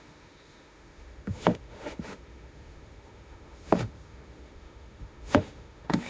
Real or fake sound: fake